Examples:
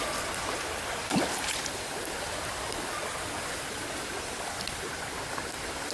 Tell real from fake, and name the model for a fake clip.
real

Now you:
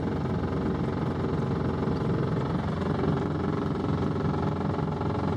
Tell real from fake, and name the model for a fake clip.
real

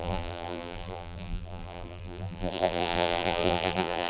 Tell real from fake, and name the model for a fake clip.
fake, vocoder, BigVGAN v2